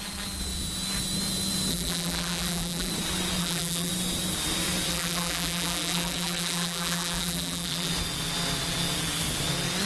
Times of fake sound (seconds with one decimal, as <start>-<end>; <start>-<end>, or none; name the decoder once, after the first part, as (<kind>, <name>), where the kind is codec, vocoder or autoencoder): 1.7-2.9 (vocoder, BigVGAN v2); 3.4-3.9; 4.9-7.9